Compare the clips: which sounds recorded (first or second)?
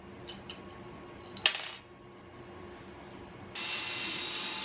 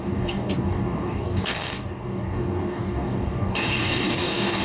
first